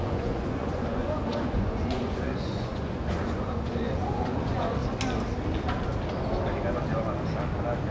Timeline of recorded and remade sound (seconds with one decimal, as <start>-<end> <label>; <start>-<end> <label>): 0.0-4.8 remade; 4.8-7.9 recorded